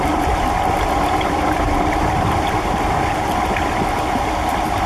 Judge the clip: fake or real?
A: real